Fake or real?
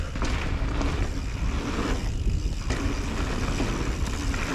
real